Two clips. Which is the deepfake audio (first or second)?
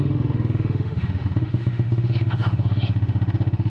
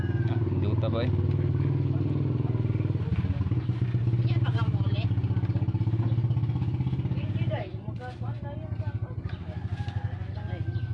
first